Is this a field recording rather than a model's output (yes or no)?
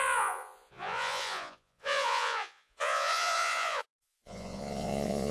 no